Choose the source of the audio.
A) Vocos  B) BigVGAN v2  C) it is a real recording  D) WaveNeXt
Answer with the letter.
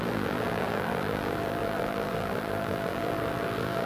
B